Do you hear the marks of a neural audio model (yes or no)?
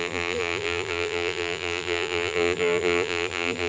yes